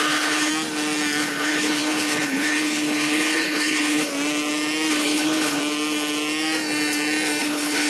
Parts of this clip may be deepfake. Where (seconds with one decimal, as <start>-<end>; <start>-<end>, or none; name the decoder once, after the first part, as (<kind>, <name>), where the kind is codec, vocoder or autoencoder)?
0.0-0.5 (codec, HILCodec); 1.2-4.1; 4.9-5.6; 7.4-7.9